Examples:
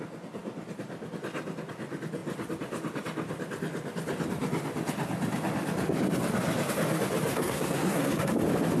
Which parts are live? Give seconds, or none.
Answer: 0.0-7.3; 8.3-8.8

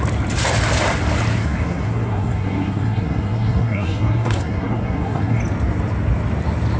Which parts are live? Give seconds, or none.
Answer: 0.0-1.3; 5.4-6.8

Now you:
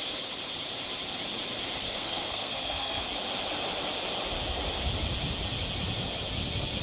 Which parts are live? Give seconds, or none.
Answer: 0.0-1.8; 3.0-6.8

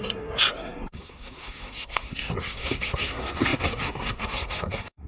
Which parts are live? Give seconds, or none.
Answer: none

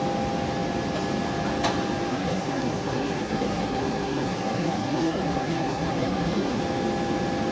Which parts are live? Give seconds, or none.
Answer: 0.0-2.1; 6.6-7.5